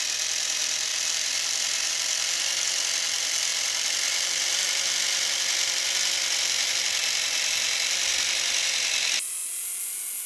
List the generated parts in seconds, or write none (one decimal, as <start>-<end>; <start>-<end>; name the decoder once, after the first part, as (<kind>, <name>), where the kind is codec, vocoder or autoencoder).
none